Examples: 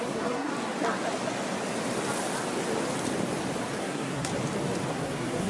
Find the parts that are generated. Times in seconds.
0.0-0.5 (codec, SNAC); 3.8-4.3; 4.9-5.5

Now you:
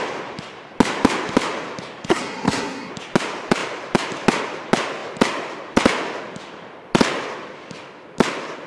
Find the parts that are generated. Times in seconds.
2.1-2.9 (codec, SNAC)

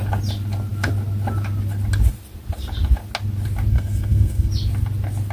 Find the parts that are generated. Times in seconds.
3.7-4.5 (codec, SNAC)

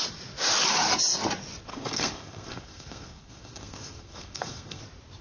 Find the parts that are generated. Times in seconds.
1.7-4.8 (codec, SNAC)

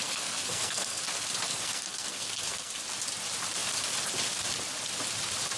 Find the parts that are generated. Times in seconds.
0.0-1.0 (codec, SNAC); 1.5-2.7

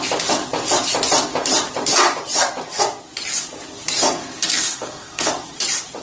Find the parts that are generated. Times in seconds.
4.2-5.3 (codec, SNAC)